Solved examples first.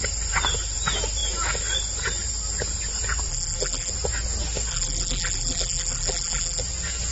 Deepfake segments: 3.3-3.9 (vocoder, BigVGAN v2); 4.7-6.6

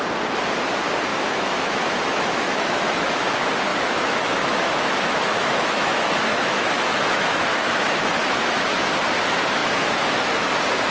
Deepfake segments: 1.1-3.1 (autoencoder, DAC-VAE); 3.7-8.6